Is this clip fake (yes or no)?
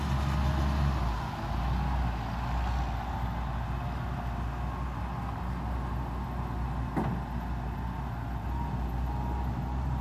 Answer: no